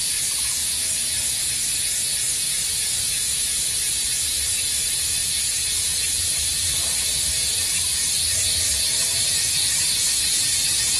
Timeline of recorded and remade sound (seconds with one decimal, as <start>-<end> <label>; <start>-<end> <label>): 0.0-0.6 remade; 0.6-2.7 recorded; 2.7-5.2 remade; 5.2-6.2 recorded; 6.2-11.0 remade